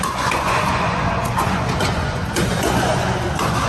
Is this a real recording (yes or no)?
no